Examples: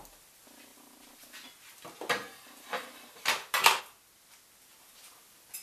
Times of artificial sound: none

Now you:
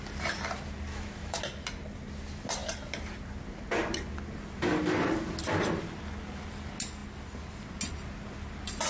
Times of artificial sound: 0.9-1.4 (autoencoder, DAC-VAE)

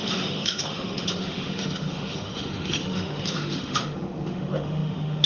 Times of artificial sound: 0.0-5.3 (autoencoder, DAC-VAE)

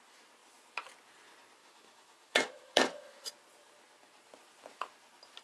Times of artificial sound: 1.6-3.3 (autoencoder, DAC-VAE)

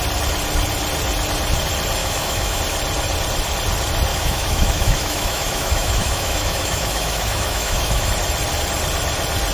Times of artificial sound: 2.0-2.6 (autoencoder, DAC-VAE); 4.1-8.1

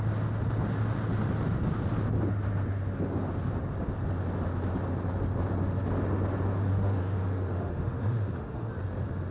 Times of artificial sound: 6.7-8.7 (autoencoder, DAC-VAE)

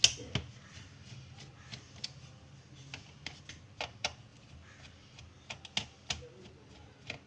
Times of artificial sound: none